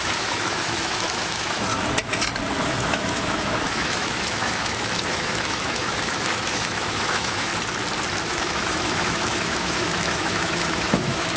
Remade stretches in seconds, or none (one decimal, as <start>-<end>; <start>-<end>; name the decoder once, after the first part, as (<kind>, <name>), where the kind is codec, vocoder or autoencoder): 0.0-1.7 (autoencoder, DAC-VAE); 2.6-7.5; 8.2-11.4